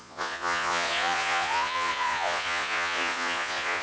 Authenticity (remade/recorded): remade